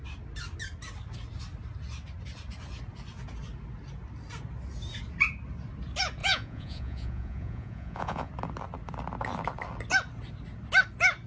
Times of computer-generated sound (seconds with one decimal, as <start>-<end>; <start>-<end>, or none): 6.2-8.3